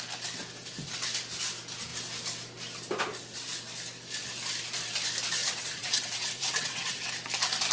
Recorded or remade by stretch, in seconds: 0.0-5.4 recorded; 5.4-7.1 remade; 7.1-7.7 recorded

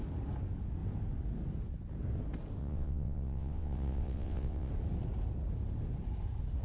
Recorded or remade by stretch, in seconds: 0.0-2.6 recorded; 2.6-4.7 remade; 4.7-6.6 recorded

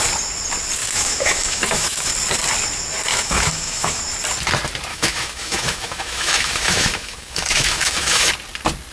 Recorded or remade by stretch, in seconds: 0.0-0.8 recorded; 0.8-2.1 remade; 2.1-3.1 recorded; 3.1-4.0 remade; 4.0-4.9 recorded; 4.9-8.3 remade; 8.3-8.9 recorded